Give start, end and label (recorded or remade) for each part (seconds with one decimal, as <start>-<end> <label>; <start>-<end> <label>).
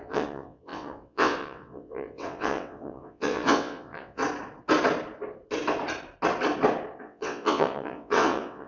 0.0-4.2 remade; 4.2-7.0 recorded; 7.0-8.7 remade